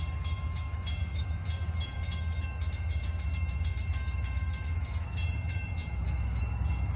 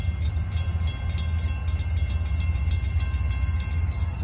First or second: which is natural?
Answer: second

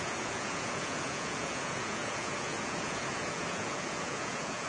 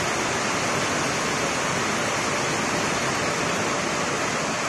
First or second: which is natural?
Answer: second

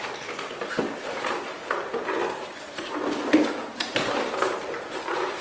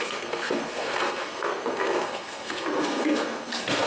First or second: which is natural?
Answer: first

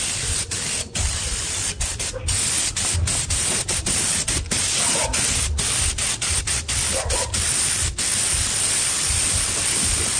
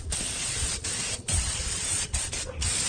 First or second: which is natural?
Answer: first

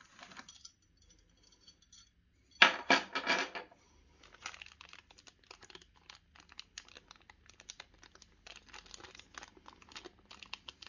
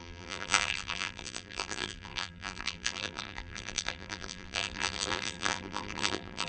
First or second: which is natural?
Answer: first